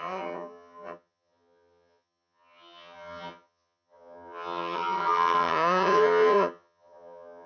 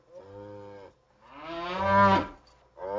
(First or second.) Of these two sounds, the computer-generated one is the first